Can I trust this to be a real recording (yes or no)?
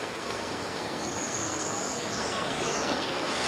no